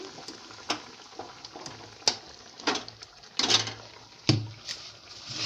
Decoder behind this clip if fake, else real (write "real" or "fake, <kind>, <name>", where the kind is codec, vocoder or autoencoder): real